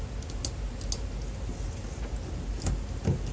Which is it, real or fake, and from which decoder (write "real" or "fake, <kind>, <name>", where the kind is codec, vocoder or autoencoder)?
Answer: real